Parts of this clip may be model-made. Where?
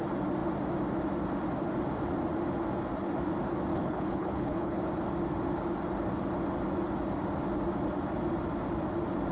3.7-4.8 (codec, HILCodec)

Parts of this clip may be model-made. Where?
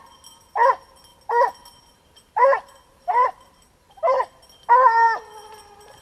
1.1-4.7 (vocoder, BigVGAN v2)